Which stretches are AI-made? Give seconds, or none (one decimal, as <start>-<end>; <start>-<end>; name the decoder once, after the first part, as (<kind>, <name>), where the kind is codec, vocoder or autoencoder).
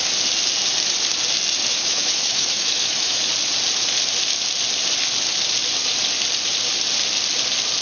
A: 1.7-3.3 (autoencoder, DAC-VAE)